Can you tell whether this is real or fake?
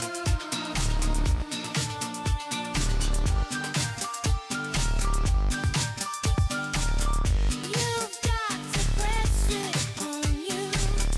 fake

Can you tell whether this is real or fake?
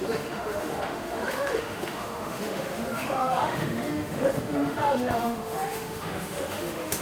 fake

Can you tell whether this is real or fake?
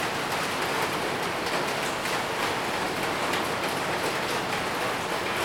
real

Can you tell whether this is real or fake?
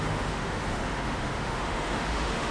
fake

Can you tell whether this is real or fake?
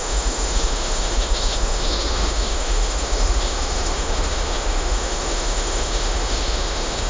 fake